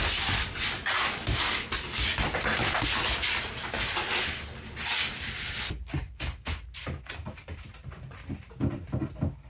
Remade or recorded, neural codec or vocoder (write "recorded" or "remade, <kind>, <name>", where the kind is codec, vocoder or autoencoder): recorded